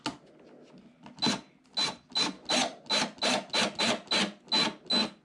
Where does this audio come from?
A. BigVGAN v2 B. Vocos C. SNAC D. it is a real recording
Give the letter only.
D